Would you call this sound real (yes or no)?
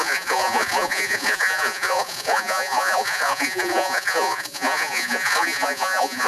no